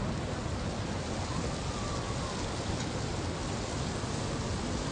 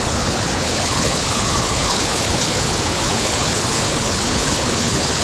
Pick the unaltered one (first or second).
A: first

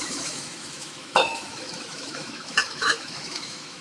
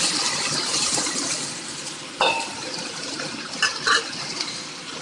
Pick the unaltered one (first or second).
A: second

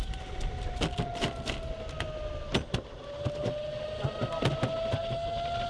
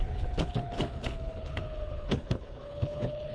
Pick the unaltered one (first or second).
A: first